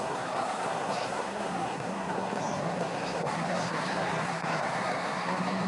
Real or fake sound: fake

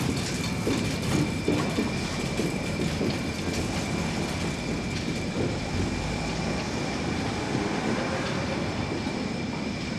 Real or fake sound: real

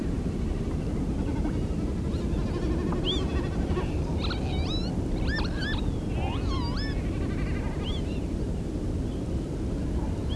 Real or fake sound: real